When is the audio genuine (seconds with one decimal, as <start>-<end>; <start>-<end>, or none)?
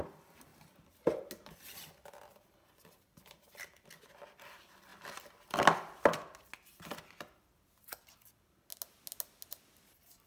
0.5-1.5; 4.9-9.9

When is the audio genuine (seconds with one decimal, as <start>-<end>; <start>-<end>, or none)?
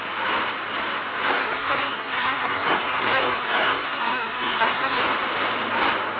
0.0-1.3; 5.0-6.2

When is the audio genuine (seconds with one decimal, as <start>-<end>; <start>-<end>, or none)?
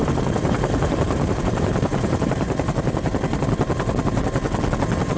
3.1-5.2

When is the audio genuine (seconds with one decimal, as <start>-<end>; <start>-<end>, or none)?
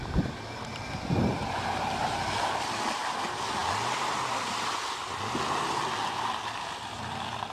0.0-7.5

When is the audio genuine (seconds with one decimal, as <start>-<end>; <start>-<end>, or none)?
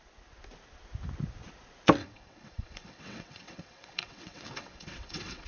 0.0-2.0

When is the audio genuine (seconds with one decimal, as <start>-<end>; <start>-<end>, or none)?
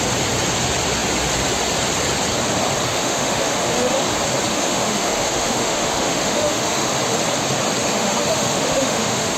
0.0-2.9; 4.0-4.5; 6.9-7.8